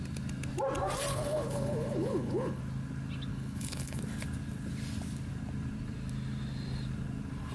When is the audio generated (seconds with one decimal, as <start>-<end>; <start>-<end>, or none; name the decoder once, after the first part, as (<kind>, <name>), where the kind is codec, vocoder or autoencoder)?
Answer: 1.1-2.6 (codec, HILCodec); 3.3-4.0